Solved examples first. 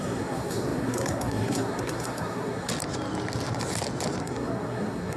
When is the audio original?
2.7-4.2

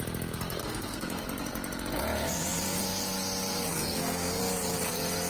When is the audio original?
0.0-0.6; 1.2-3.7; 4.4-5.3

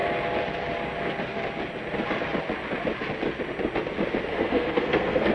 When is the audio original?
0.0-4.3

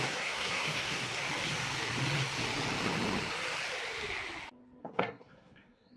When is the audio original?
1.2-4.8